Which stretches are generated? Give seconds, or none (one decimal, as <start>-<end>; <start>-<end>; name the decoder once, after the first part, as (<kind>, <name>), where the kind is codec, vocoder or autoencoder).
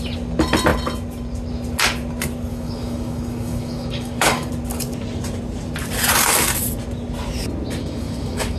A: 2.5-4.5 (codec, DAC); 7.8-8.6